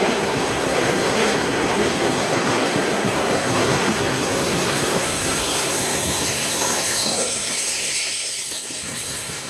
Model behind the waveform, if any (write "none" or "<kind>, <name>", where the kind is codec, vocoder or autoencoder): codec, SNAC